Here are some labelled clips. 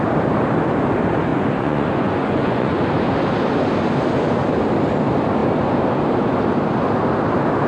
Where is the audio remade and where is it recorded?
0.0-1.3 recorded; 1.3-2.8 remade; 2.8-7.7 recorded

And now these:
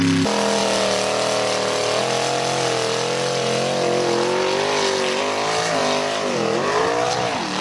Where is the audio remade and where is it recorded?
0.0-7.6 recorded

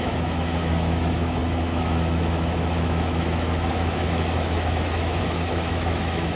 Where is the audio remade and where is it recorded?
0.0-6.4 remade